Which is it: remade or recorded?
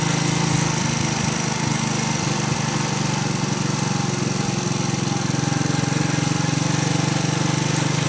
recorded